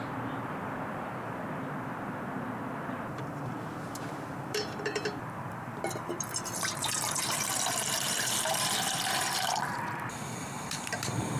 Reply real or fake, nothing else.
fake